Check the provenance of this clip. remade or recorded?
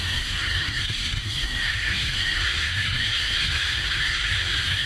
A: remade